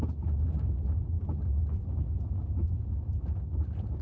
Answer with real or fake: real